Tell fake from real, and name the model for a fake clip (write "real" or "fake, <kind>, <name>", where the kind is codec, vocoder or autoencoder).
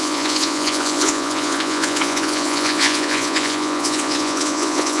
fake, vocoder, Vocos